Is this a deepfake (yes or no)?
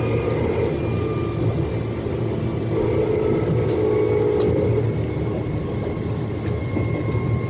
no